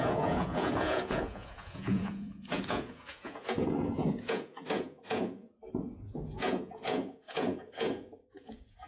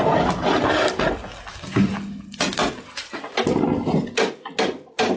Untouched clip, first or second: second